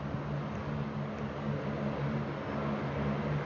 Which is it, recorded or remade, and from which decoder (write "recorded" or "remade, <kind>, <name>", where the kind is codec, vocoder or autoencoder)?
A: recorded